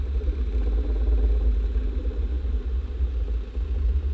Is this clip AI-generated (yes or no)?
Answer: no